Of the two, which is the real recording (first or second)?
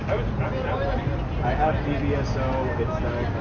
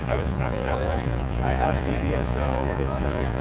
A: first